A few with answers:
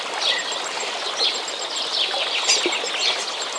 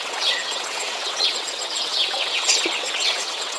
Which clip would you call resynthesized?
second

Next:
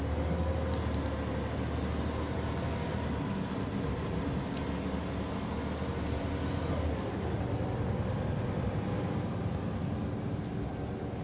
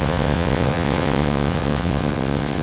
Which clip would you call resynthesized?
second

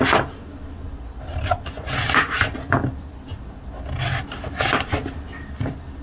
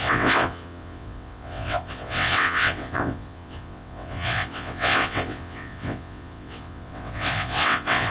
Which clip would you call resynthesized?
second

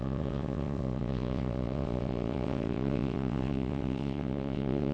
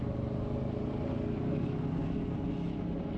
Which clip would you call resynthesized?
first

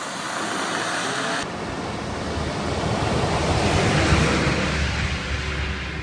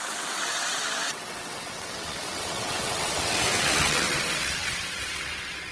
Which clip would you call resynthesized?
second